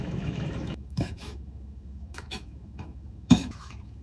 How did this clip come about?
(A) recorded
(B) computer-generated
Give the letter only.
B